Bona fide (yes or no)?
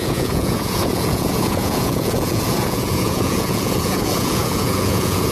no